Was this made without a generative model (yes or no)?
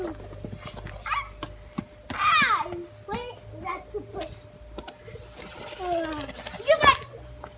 yes